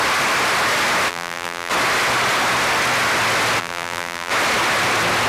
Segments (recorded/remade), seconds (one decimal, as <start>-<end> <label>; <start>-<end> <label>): 0.0-1.1 recorded; 1.1-1.7 remade; 1.7-3.6 recorded; 3.6-4.3 remade; 4.3-5.3 recorded